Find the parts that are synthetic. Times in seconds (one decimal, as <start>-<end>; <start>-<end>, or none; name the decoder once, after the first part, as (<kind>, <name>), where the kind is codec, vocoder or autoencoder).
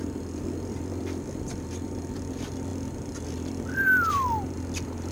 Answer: none